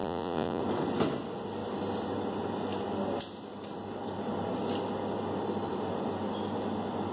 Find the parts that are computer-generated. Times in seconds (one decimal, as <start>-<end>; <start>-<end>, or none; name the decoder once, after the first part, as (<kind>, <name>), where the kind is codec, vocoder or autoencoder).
0.0-0.6 (vocoder, Vocos)